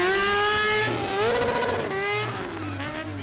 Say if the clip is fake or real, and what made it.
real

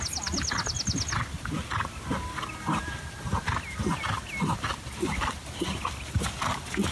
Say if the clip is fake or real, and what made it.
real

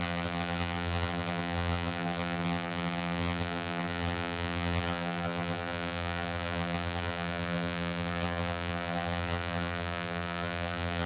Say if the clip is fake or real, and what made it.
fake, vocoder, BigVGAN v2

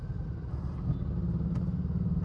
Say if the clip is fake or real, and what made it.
real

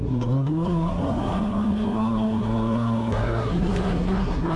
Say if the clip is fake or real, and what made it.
fake, codec, SNAC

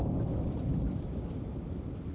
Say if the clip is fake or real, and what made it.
real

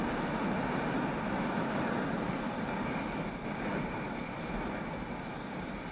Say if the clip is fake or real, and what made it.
real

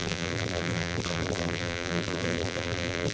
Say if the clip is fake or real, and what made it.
fake, vocoder, BigVGAN v2